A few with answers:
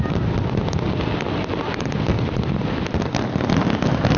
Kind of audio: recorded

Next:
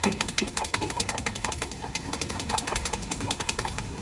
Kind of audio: remade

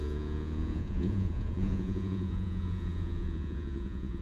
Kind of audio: remade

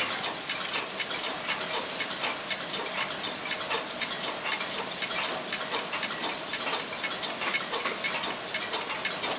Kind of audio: recorded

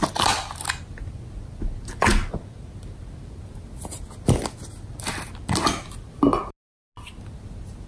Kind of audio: recorded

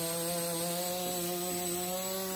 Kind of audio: recorded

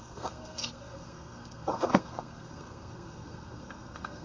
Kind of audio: remade